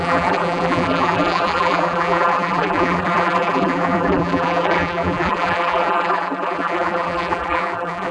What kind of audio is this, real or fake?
fake